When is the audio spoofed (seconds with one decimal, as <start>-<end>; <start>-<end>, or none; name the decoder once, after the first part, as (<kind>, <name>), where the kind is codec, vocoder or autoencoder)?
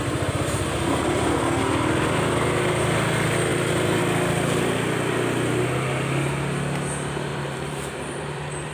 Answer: 3.5-4.0 (vocoder, BigVGAN v2); 7.3-8.7